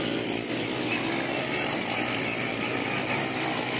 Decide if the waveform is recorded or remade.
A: recorded